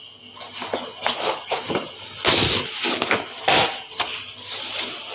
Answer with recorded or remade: recorded